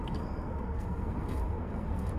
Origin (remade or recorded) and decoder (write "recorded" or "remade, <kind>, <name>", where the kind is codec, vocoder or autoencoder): remade, codec, SNAC